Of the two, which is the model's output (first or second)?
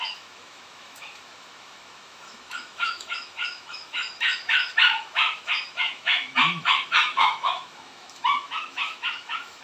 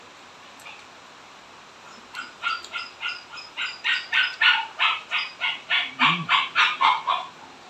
first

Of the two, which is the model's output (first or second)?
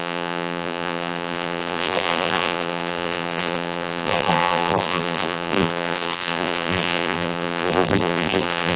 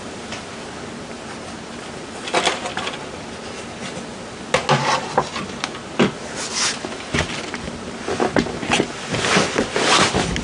first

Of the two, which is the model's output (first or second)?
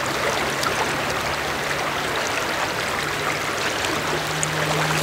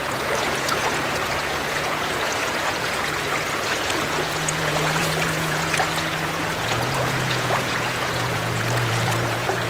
second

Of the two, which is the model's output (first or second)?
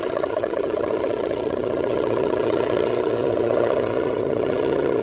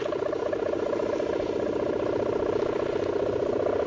first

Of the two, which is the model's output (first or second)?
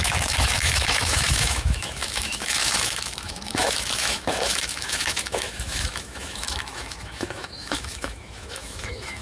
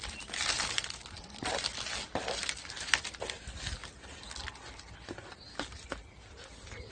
first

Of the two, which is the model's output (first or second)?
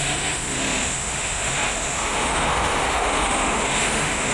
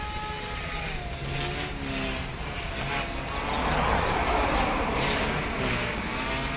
first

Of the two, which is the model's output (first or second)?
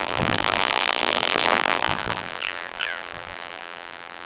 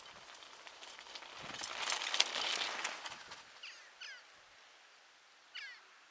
first